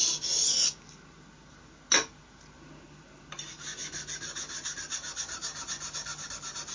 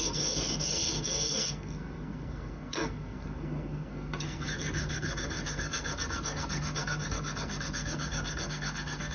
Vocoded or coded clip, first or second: second